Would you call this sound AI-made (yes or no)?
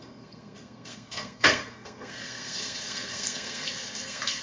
yes